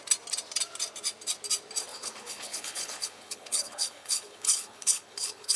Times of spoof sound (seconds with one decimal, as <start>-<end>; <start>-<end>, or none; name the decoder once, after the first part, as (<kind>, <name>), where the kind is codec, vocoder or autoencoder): 1.9-5.6 (codec, HILCodec)